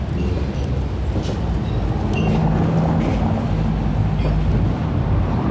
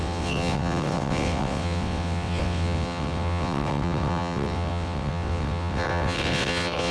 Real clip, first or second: first